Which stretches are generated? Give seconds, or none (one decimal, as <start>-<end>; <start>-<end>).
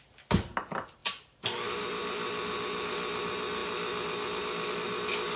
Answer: none